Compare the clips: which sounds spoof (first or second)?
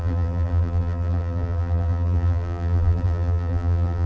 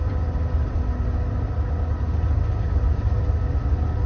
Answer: first